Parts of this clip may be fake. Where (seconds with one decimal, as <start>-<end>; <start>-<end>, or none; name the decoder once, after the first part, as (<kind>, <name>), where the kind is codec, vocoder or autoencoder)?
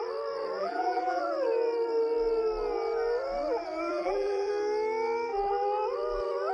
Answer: 0.6-1.2 (vocoder, BigVGAN v2); 3.9-4.5